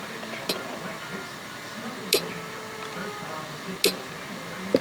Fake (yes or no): no